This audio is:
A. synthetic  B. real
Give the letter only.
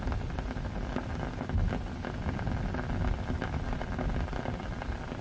B